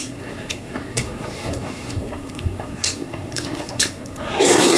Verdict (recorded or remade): remade